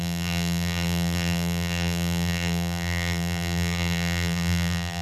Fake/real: fake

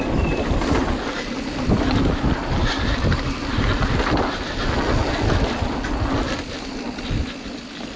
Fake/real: real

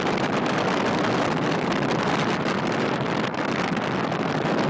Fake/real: fake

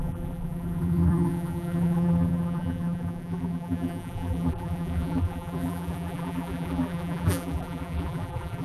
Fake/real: fake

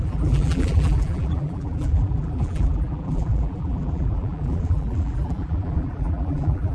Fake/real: fake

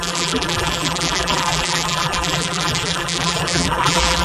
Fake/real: fake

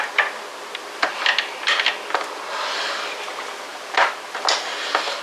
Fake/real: real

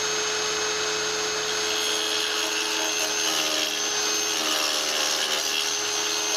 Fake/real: real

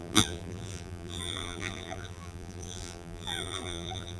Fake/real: fake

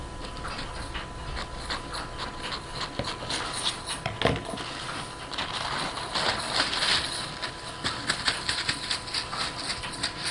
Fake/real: real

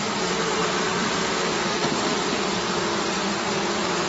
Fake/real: real